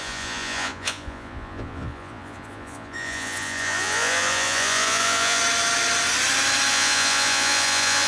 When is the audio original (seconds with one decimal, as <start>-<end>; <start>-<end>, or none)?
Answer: 5.4-6.7